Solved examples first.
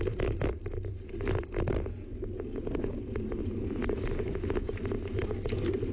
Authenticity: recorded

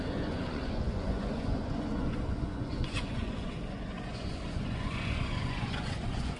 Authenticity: remade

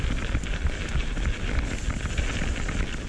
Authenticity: recorded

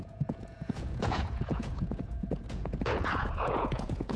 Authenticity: remade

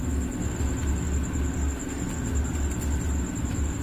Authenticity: recorded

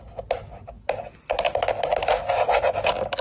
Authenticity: recorded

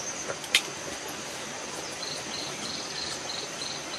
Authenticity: recorded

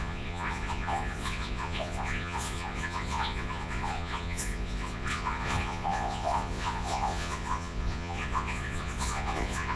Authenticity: remade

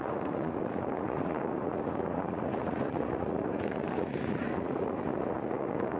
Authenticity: remade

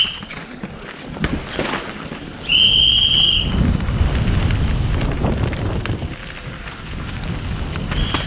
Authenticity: recorded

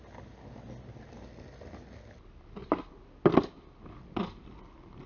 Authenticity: recorded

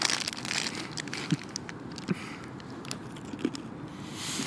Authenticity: recorded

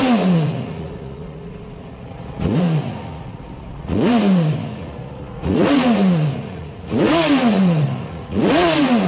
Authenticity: remade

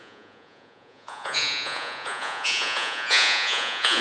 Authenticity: remade